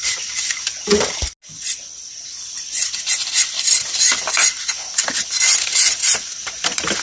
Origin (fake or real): real